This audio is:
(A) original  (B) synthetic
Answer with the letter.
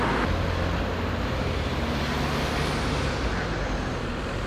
A